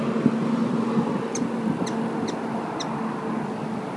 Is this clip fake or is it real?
real